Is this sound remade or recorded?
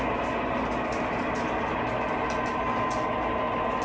recorded